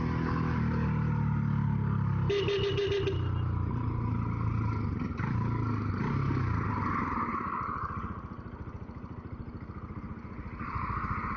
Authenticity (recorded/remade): recorded